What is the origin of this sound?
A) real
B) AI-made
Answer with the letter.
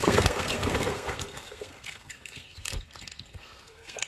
B